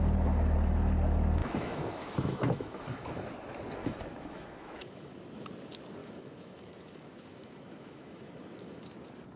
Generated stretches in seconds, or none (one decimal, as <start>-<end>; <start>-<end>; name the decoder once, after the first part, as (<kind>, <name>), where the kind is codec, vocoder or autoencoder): 1.4-3.3 (autoencoder, DAC-VAE); 3.8-5.1; 6.0-8.8